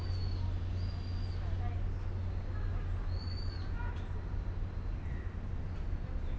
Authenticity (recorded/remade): recorded